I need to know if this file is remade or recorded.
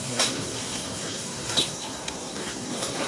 remade